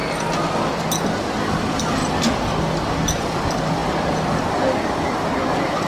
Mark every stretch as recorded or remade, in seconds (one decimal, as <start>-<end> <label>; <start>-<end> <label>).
0.0-0.6 recorded; 0.6-2.0 remade; 2.0-3.0 recorded; 3.0-5.9 remade